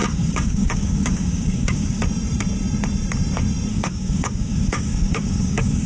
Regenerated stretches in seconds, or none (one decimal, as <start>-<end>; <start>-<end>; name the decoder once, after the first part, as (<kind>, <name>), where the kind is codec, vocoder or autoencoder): 0.0-2.0 (codec, DAC); 3.7-5.9